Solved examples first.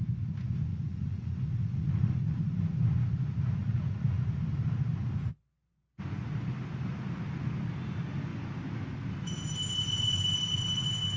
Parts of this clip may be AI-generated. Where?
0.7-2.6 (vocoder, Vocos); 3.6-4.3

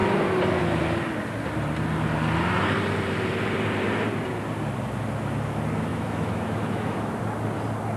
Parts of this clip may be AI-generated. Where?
5.9-7.2 (autoencoder, DAC-VAE)

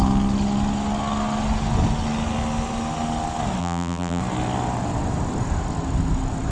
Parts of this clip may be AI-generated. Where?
3.6-4.2 (vocoder, BigVGAN v2)